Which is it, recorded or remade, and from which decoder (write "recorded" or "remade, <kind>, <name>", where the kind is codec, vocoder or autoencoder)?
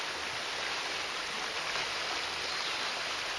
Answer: recorded